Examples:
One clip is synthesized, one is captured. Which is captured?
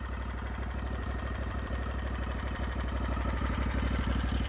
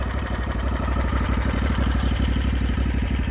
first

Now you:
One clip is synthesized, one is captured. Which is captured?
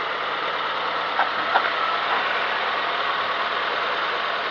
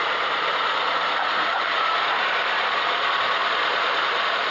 first